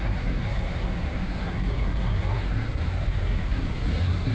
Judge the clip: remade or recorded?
remade